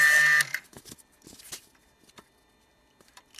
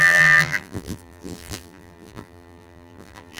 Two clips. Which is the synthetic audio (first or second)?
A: second